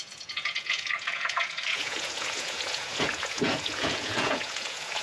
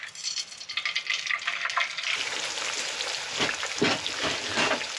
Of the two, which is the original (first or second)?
second